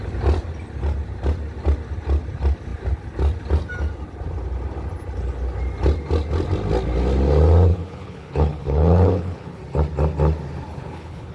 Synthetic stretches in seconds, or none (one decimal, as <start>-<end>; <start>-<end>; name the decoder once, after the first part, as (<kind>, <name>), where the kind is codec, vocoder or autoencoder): 7.7-9.6 (codec, HILCodec); 10.7-11.3

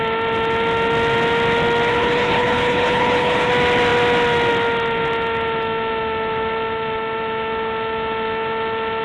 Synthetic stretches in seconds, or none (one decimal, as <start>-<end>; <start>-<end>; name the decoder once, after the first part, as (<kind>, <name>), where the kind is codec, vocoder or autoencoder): 1.9-3.5 (codec, HILCodec)

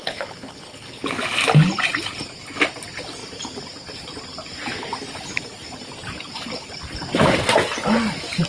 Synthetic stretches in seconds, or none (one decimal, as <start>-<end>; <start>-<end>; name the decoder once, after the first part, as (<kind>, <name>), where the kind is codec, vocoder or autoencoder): 0.0-1.0 (codec, HILCodec)

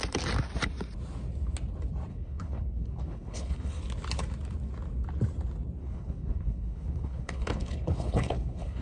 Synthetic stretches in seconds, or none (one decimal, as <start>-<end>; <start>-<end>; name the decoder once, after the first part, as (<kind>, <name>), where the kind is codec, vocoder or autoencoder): 2.1-3.8 (codec, HILCodec); 5.8-8.8

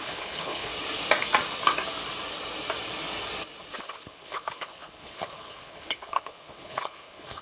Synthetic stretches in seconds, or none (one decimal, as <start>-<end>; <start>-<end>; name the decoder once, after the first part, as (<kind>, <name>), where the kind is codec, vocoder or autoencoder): 0.0-0.7 (codec, HILCodec); 3.8-7.4

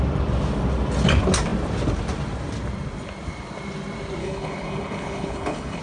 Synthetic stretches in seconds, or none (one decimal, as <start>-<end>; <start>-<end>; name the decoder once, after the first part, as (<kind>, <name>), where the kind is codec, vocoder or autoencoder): 4.2-5.8 (codec, HILCodec)

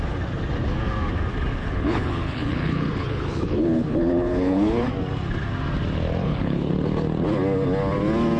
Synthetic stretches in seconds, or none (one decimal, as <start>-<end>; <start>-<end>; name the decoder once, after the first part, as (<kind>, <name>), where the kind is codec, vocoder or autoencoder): 1.6-4.9 (codec, HILCodec); 6.2-6.7

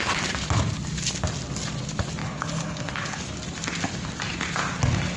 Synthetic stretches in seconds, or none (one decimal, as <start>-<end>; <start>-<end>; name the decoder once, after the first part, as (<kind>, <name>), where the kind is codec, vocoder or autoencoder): 2.2-3.2 (codec, HILCodec)